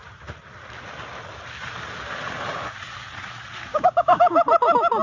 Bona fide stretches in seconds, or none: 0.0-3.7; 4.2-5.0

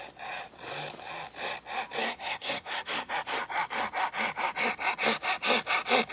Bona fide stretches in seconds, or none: 0.0-2.0; 3.1-6.1

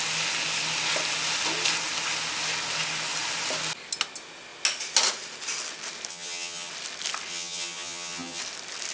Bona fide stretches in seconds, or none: 0.0-6.1; 6.7-7.3; 8.4-8.9